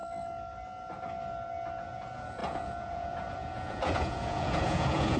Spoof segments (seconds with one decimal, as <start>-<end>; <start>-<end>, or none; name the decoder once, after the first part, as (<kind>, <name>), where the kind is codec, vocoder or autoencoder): 1.8-5.2 (vocoder, Vocos)